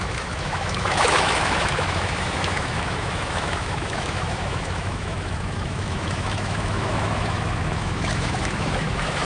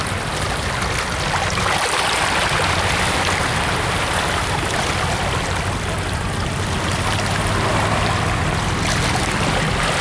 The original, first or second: second